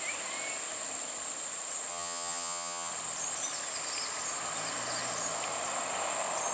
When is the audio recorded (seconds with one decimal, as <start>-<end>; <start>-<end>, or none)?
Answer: 0.0-1.9; 2.9-6.5